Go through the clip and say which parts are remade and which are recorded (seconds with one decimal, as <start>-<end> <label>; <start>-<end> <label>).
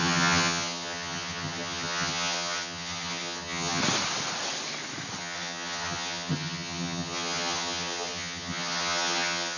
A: 0.0-3.8 remade; 3.8-5.2 recorded; 5.2-9.6 remade